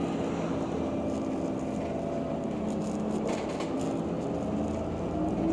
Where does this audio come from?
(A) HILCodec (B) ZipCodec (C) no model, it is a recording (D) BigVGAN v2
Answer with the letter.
C